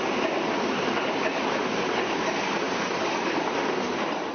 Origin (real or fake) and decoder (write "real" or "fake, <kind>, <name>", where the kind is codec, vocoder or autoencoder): real